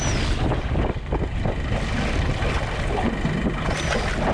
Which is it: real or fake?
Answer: real